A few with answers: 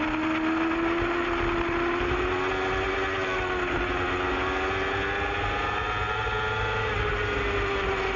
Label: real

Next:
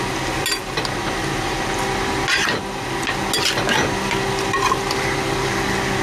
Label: real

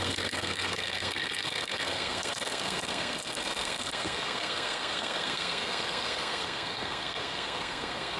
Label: fake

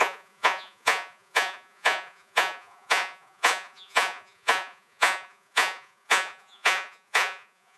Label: fake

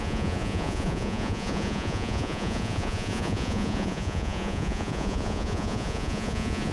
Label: fake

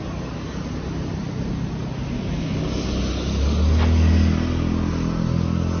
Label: real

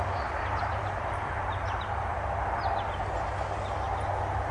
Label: fake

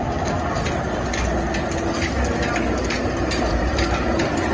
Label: real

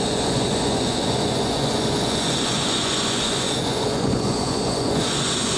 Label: fake